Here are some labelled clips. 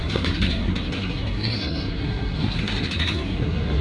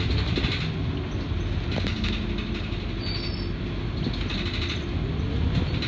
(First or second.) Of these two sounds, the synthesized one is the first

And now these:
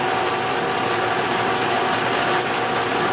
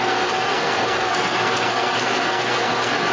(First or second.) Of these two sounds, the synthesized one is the second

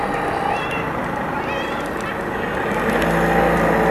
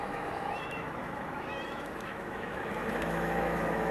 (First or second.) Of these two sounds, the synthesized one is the second